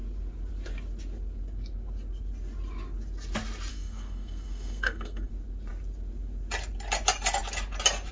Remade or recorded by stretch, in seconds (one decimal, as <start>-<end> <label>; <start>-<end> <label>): 0.0-3.7 recorded; 3.7-5.3 remade; 5.3-8.1 recorded